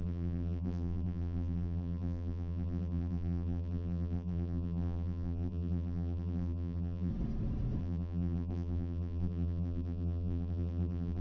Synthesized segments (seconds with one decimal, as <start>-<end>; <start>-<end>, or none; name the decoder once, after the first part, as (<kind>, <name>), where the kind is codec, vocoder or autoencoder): 0.0-7.1 (vocoder, BigVGAN v2); 7.8-11.2